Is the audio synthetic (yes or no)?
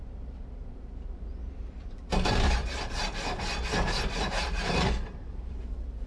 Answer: yes